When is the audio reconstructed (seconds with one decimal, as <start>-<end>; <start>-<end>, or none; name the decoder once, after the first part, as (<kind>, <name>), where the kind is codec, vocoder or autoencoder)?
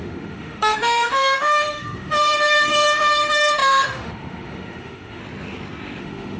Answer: 0.0-5.2 (autoencoder, DAC-VAE); 6.0-6.4